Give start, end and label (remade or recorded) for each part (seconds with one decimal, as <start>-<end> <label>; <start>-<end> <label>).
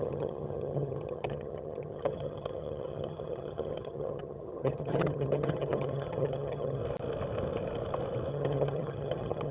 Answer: 0.0-6.8 remade; 6.8-8.3 recorded; 8.3-9.5 remade